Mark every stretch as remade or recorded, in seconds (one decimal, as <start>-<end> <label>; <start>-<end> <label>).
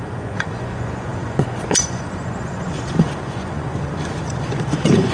0.0-5.1 remade